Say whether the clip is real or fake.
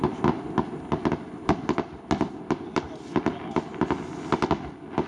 real